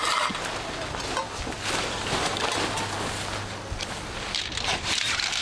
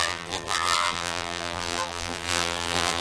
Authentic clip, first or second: first